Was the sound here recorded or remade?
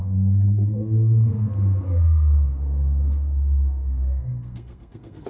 remade